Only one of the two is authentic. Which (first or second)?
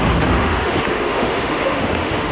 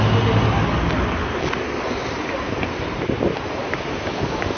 second